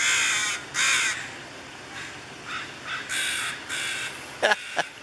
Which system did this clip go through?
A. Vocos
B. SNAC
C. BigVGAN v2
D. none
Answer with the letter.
D